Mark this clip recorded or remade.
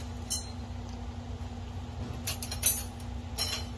recorded